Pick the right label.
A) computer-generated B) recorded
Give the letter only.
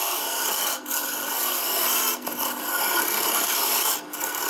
A